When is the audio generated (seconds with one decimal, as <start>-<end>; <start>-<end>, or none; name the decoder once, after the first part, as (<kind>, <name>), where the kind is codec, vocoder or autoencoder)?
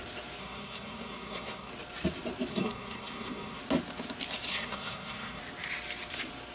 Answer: 0.4-1.7 (codec, SNAC); 2.5-3.6; 4.5-5.4